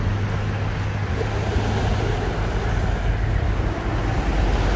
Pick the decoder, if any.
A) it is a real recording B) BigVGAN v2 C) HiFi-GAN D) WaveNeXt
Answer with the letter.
A